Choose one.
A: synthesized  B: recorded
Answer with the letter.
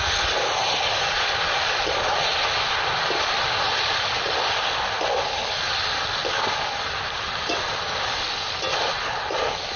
B